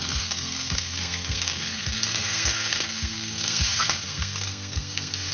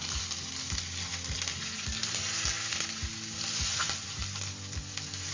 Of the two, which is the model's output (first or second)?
first